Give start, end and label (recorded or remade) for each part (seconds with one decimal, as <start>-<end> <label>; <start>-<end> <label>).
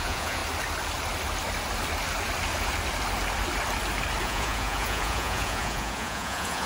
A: 0.0-0.4 remade; 0.4-4.2 recorded; 4.2-6.7 remade